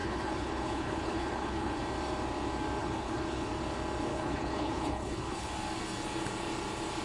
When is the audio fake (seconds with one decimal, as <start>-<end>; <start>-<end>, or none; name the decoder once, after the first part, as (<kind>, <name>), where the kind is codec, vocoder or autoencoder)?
0.0-1.8 (codec, HILCodec); 2.8-3.5; 4.1-5.5